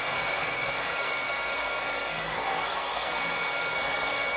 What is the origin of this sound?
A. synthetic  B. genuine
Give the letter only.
A